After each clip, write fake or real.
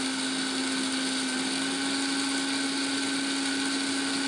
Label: real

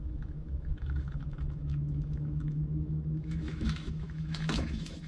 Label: fake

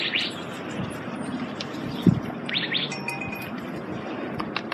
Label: fake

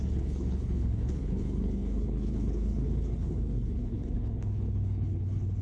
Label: fake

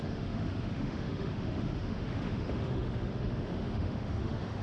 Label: fake